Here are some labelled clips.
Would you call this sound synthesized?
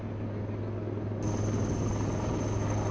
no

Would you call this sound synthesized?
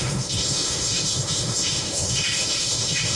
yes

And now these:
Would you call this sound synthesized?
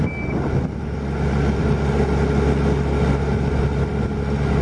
no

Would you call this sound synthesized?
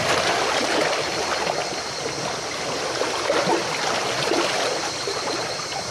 no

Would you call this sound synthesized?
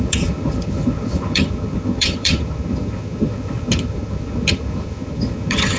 yes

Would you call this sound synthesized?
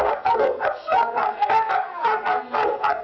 yes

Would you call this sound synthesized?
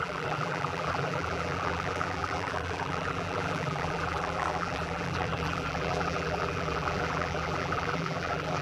yes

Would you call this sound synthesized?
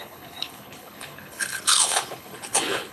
yes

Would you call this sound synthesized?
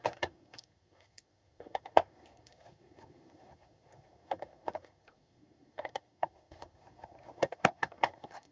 yes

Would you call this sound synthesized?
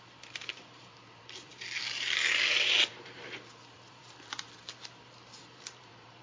yes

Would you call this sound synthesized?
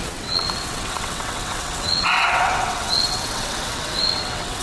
yes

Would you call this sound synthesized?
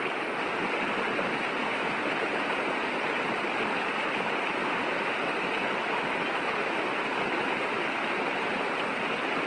no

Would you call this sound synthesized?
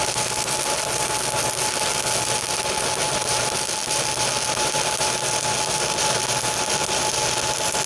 no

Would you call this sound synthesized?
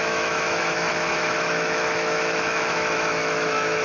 yes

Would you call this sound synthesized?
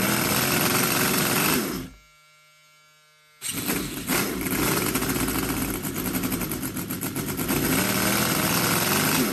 no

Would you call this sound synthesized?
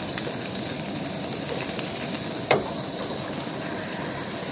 no